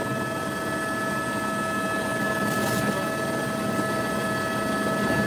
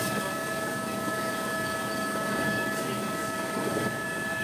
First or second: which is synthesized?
second